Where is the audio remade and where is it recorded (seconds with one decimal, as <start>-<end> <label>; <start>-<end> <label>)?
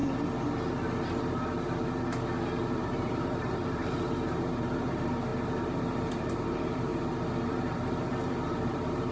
0.0-2.7 recorded; 2.7-5.3 remade; 5.3-6.1 recorded; 6.1-6.9 remade; 6.9-7.5 recorded; 7.5-9.1 remade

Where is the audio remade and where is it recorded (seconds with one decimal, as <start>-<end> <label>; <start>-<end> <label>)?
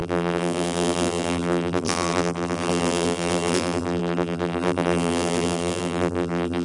0.0-6.6 remade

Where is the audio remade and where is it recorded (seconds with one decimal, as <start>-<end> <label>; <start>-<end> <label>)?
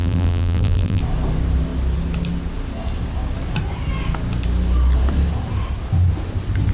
0.0-1.0 remade; 1.0-6.7 recorded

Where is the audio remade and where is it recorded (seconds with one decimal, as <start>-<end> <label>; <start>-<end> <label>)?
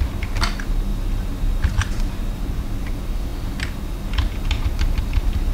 0.0-0.9 recorded; 0.9-2.4 remade; 2.4-5.5 recorded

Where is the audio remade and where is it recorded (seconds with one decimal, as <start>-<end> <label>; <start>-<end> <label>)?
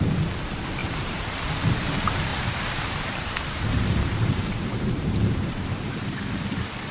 0.0-0.8 recorded; 0.8-1.5 remade; 1.5-2.3 recorded; 2.3-5.6 remade; 5.6-6.9 recorded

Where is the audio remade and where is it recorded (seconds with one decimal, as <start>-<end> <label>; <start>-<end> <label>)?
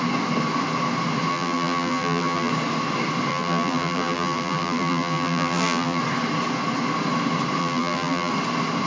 0.0-1.3 recorded; 1.3-2.5 remade; 2.5-3.3 recorded; 3.3-6.0 remade; 6.0-7.6 recorded; 7.6-8.3 remade; 8.3-8.9 recorded